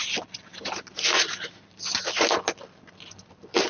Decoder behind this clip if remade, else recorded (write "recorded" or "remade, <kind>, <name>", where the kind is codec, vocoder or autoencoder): recorded